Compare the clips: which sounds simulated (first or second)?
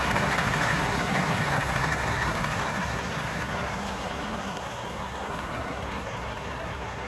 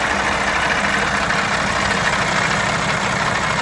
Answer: first